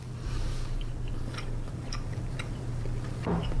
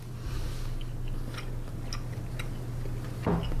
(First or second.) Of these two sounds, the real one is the second